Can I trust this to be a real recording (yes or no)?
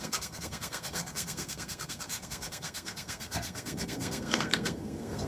no